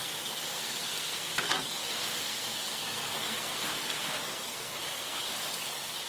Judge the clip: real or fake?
fake